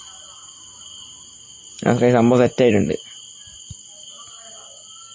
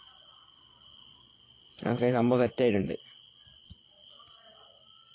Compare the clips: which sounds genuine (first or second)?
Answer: first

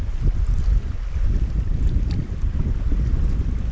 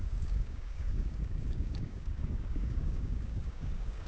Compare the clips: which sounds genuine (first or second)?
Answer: first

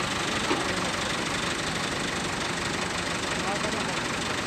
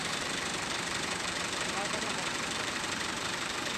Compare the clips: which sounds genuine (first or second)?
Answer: first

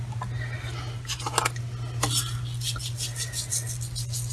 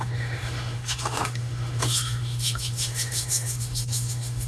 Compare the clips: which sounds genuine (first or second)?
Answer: first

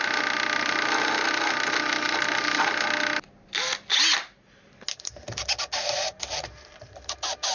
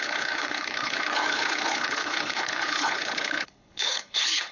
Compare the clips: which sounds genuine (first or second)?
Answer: first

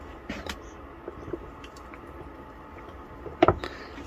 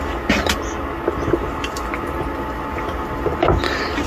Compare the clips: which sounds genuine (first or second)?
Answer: second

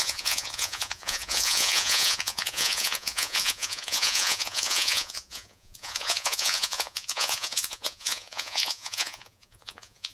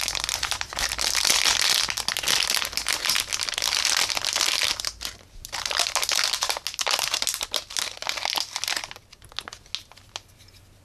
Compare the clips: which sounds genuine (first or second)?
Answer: second